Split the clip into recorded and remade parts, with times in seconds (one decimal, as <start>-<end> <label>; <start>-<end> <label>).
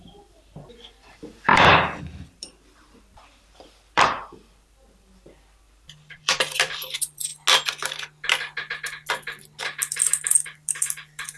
0.0-7.3 remade; 7.3-9.6 recorded; 9.6-11.4 remade